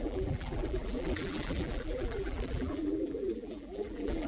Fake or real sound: fake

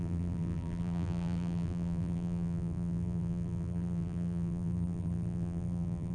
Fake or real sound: fake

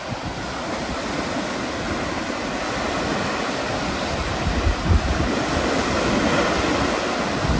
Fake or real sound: real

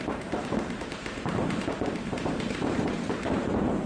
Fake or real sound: fake